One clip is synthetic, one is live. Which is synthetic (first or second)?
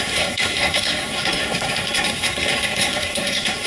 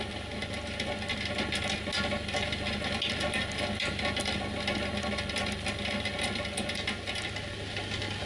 first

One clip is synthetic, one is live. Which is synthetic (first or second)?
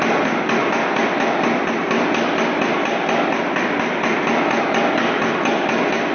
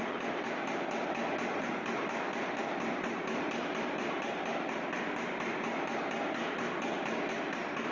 second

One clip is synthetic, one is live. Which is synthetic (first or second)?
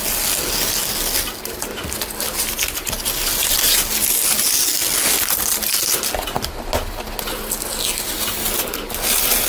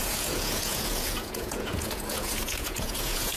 second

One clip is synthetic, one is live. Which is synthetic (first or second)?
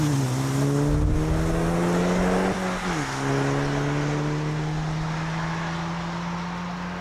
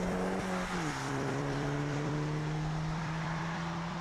second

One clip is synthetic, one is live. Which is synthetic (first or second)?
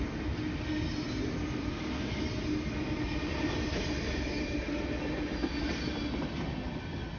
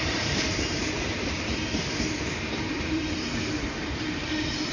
second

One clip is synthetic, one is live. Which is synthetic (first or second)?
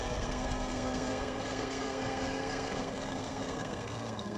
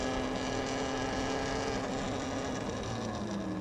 first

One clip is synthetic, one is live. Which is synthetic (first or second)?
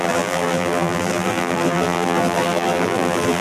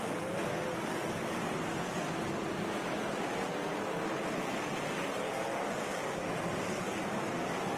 first